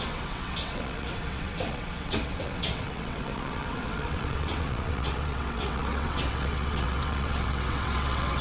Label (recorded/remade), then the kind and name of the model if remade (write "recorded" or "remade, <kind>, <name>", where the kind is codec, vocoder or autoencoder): remade, vocoder, WaveNeXt